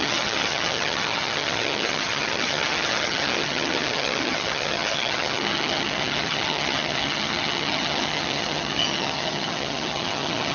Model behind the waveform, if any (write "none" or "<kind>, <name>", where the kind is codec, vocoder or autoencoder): vocoder, HiFi-GAN